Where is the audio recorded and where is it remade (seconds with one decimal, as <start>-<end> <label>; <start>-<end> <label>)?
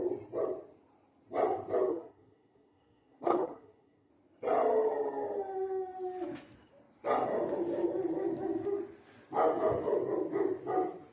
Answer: 0.0-1.9 recorded; 1.9-4.1 remade; 4.1-11.1 recorded